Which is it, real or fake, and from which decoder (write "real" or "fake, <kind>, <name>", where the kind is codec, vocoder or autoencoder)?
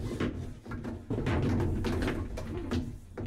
real